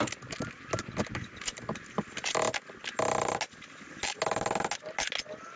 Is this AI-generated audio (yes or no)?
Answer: no